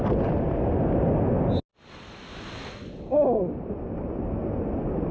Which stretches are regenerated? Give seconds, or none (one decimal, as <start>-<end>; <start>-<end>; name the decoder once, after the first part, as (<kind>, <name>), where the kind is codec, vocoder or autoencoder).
none